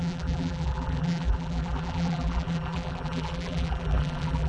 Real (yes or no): no